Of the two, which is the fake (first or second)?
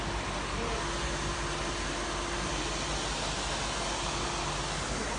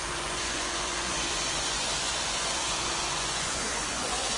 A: second